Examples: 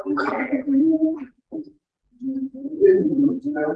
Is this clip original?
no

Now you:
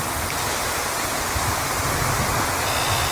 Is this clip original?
yes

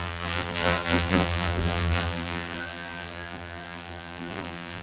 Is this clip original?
no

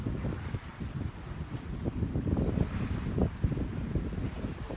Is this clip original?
no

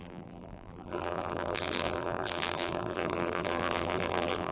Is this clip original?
no